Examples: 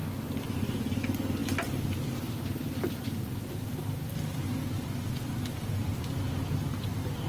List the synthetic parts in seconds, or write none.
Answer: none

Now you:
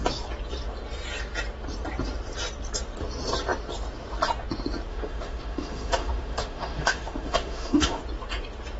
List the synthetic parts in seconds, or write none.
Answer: 4.9-8.0 (autoencoder, DAC-VAE)

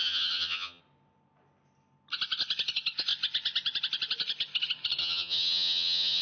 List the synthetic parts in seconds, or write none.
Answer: 0.0-0.8 (vocoder, HiFi-GAN); 5.0-6.2